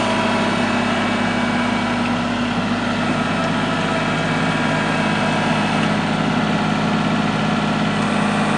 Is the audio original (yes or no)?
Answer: yes